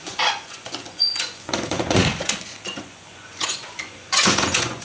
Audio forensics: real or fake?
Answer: fake